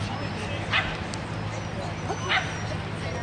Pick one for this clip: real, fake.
real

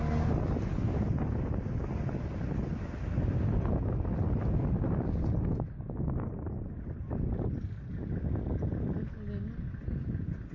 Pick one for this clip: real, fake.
real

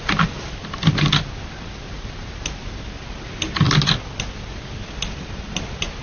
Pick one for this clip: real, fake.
real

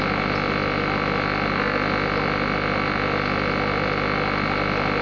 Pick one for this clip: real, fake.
real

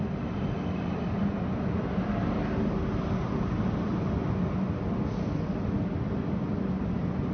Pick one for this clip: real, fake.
real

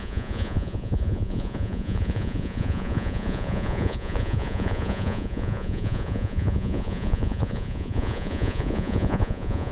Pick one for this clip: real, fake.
fake